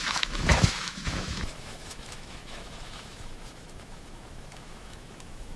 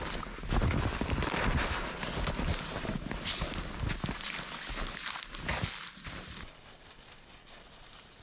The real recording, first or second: second